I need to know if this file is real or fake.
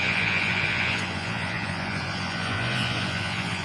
fake